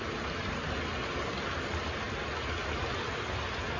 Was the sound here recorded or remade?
recorded